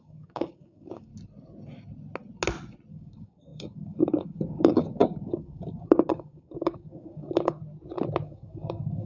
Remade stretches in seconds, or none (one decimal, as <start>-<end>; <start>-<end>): 0.0-1.1; 2.9-7.6; 8.2-9.1